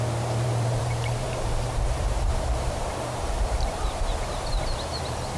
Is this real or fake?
fake